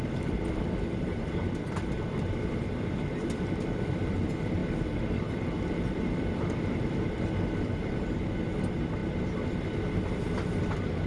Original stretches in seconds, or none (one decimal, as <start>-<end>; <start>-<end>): 9.0-10.2